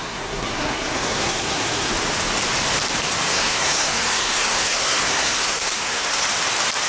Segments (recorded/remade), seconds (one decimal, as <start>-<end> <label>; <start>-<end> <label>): 0.0-1.9 remade; 1.9-3.3 recorded; 3.3-6.2 remade; 6.2-6.9 recorded